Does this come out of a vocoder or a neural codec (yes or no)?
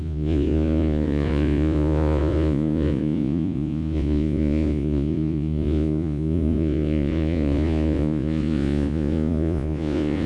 yes